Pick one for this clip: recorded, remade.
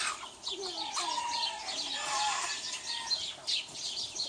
recorded